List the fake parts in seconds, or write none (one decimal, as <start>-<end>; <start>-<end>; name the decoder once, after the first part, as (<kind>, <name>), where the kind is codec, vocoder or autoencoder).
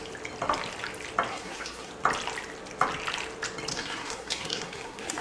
1.3-1.9 (codec, SNAC); 3.7-5.2